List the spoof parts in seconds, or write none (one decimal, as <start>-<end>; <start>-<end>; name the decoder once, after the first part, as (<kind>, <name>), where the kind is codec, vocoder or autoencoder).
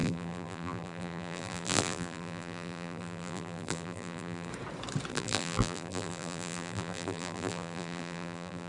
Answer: 0.0-4.5 (vocoder, BigVGAN v2); 5.1-8.7